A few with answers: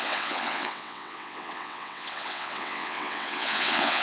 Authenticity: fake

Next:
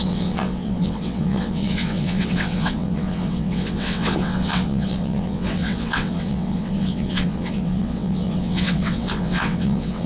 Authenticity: fake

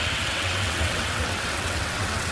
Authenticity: fake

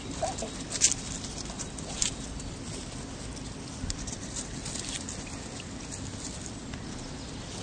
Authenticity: real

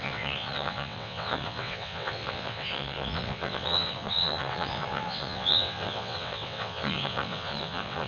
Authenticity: fake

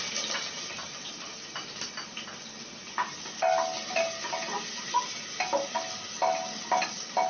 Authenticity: real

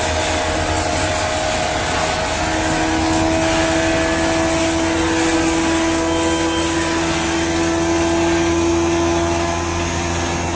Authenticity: real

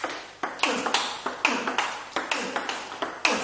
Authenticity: real